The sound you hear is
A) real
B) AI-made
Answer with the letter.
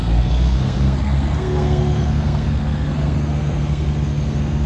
B